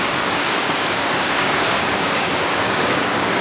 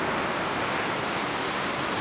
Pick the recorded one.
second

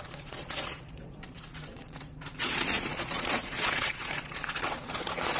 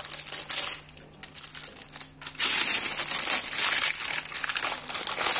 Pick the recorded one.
second